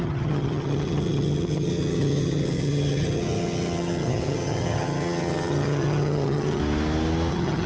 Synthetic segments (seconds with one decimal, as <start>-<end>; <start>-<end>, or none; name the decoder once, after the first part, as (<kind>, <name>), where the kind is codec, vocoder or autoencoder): 0.0-6.6 (vocoder, HiFi-GAN); 7.3-7.7